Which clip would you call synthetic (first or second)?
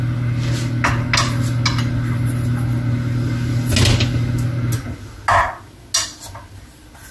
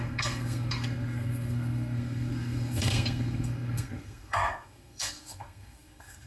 second